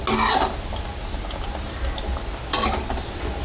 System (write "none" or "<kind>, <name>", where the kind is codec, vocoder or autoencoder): none